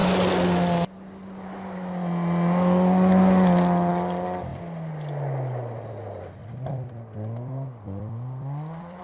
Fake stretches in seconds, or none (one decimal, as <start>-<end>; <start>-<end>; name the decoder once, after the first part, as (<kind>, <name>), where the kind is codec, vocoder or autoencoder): 6.4-9.0 (vocoder, BigVGAN v2)